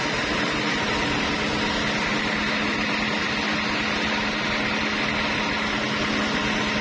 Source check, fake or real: real